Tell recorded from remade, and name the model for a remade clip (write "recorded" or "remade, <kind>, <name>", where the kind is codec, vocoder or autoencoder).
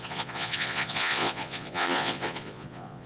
remade, vocoder, Vocos